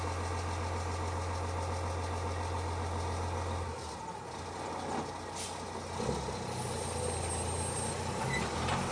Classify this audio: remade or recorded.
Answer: recorded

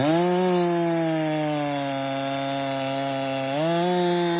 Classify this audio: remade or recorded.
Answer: recorded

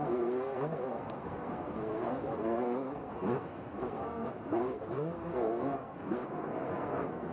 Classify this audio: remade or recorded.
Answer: remade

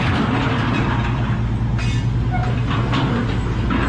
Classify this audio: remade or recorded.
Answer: recorded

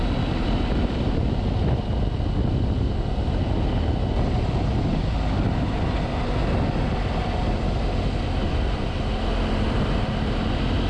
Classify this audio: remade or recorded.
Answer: recorded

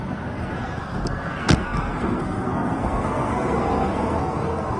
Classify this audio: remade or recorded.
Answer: remade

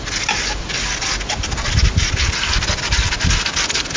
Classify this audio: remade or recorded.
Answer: recorded